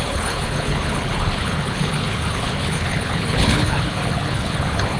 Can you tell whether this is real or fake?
fake